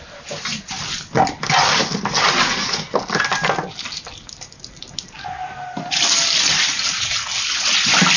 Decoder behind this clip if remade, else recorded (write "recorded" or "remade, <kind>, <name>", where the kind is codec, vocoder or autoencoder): recorded